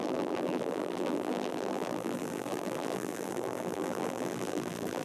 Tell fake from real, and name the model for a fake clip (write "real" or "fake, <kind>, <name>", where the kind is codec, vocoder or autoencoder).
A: fake, vocoder, BigVGAN v2